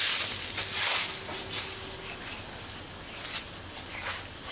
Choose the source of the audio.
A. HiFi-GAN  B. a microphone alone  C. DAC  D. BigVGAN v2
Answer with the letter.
B